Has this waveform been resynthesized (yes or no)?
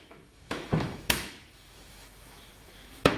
yes